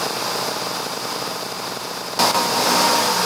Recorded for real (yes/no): yes